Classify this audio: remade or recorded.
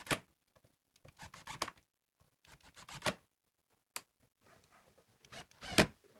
recorded